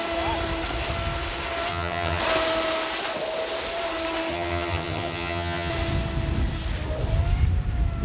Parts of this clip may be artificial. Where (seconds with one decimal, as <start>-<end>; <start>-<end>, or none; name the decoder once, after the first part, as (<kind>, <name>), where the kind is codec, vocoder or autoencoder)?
1.7-2.2 (vocoder, HiFi-GAN); 4.3-5.7